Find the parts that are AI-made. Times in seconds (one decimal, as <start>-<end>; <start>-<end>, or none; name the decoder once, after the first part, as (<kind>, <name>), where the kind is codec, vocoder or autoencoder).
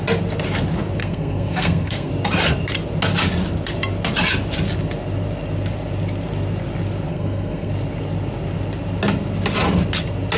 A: 1.0-2.1 (codec, SNAC); 7.1-7.7